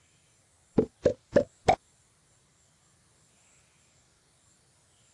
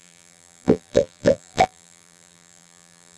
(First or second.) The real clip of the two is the first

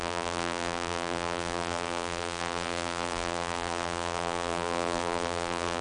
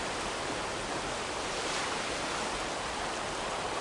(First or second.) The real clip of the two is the second